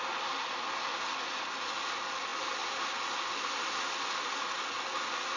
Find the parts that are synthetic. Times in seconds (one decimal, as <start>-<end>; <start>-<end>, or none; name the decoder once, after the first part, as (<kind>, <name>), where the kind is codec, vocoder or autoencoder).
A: none